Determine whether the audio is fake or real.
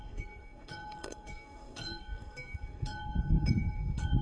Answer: fake